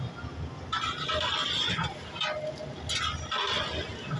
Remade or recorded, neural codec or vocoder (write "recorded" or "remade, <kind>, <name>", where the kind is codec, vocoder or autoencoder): recorded